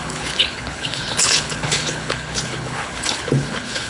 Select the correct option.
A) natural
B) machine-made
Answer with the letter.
B